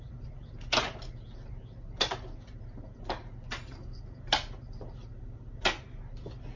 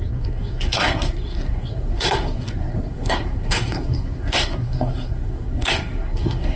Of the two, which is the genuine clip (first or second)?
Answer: first